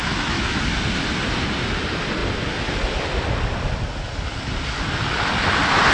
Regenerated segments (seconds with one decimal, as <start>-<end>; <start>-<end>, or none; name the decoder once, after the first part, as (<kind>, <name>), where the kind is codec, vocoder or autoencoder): 0.0-0.6 (autoencoder, DAC-VAE)